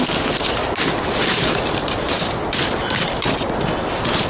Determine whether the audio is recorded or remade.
recorded